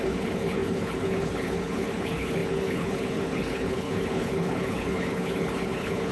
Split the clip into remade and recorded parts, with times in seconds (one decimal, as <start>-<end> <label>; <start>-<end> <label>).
0.0-6.1 remade